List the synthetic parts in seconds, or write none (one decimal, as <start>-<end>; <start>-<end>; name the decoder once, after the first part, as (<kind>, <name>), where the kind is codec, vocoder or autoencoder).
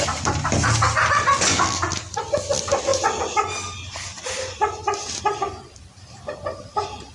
none